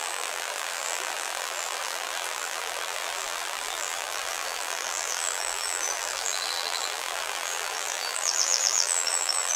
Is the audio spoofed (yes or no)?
yes